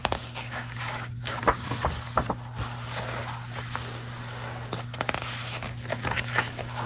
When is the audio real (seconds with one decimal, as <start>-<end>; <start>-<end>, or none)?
1.4-5.9